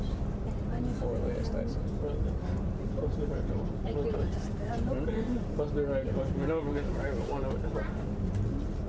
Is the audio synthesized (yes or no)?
no